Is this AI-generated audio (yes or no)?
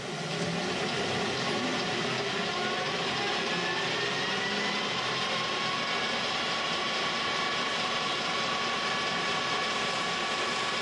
yes